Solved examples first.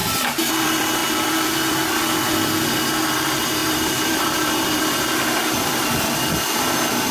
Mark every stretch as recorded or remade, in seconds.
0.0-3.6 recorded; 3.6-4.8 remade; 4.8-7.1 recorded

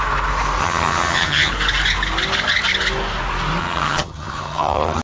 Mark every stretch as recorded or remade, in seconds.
0.0-0.6 recorded; 0.6-1.5 remade; 1.5-3.6 recorded; 3.6-5.0 remade

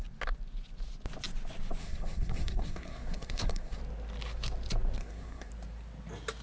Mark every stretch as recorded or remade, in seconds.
0.0-1.8 recorded; 1.8-3.8 remade; 3.8-5.0 recorded; 5.0-5.5 remade; 5.5-6.4 recorded

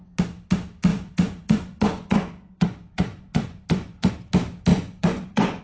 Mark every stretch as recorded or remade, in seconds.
0.0-0.9 recorded; 0.9-4.1 remade; 4.1-4.7 recorded; 4.7-5.6 remade

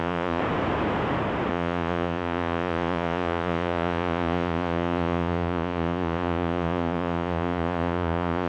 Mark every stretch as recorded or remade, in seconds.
0.0-0.4 remade; 0.4-1.5 recorded; 1.5-8.5 remade

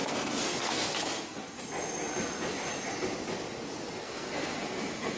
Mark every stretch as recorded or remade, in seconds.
0.0-1.6 remade; 1.6-4.0 recorded; 4.0-5.2 remade

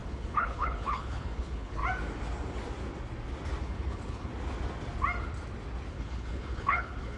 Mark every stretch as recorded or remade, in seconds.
0.0-1.8 remade; 1.8-3.6 recorded; 3.6-4.3 remade; 4.3-5.9 recorded; 5.9-7.2 remade

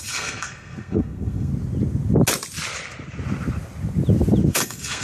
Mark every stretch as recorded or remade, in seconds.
0.0-1.5 remade; 1.5-4.5 recorded; 4.5-5.0 remade